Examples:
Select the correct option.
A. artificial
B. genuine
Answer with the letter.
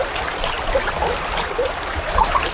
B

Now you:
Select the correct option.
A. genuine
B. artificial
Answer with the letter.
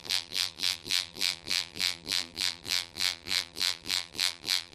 B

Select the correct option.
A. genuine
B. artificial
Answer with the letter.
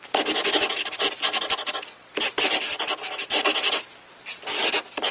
A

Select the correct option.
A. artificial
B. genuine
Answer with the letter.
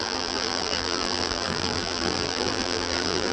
A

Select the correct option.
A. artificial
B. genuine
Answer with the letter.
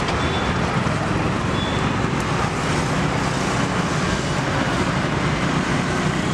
B